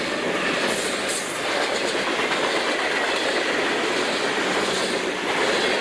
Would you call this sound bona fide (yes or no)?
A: yes